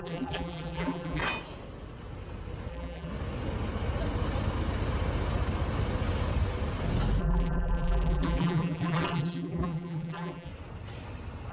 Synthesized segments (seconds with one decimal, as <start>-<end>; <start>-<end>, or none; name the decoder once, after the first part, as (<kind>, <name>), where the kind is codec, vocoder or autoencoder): 0.0-1.2 (vocoder, BigVGAN v2); 2.7-3.1; 7.2-10.5